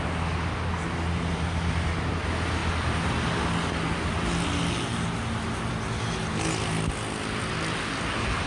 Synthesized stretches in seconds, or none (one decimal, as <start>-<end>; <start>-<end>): none